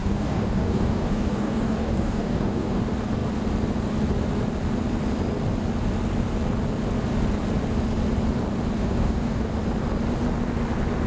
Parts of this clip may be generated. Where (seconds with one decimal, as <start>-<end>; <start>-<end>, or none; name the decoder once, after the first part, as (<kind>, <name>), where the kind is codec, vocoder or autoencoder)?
0.0-2.8 (codec, DAC); 8.8-9.5